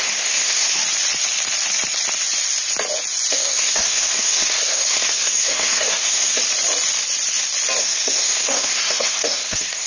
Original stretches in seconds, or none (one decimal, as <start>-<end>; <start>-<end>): 0.8-3.3; 6.4-7.8